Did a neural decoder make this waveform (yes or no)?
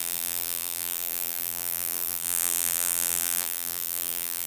yes